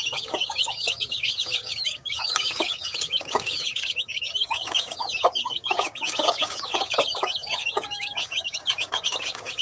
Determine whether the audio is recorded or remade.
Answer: remade